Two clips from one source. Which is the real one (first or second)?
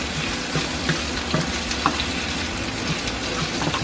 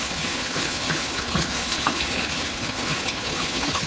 first